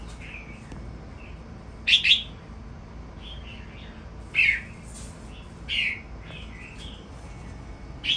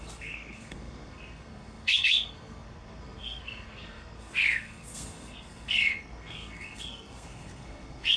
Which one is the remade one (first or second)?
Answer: second